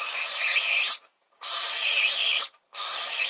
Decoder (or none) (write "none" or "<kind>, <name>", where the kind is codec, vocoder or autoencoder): vocoder, BigVGAN v2